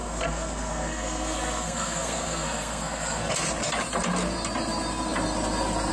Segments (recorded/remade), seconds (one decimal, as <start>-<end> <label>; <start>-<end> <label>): 0.0-3.3 remade; 3.3-5.9 recorded